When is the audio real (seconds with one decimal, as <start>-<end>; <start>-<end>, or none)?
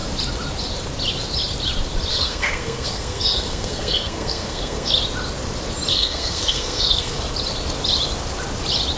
0.0-2.1; 4.9-5.9; 7.2-9.0